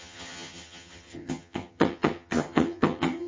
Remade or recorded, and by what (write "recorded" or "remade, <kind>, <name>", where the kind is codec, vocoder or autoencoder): remade, vocoder, HiFi-GAN